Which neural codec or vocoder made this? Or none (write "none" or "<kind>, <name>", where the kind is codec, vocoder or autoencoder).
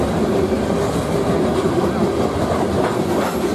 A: none